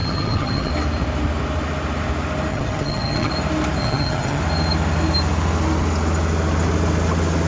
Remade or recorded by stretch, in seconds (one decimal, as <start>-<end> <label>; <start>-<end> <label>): 0.0-0.7 remade; 0.7-2.5 recorded; 2.5-3.3 remade; 3.3-3.8 recorded; 3.8-4.4 remade; 4.4-7.5 recorded